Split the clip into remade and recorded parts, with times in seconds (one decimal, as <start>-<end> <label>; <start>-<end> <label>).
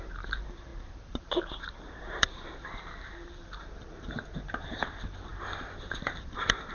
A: 0.0-5.3 remade; 5.3-5.8 recorded; 5.8-6.7 remade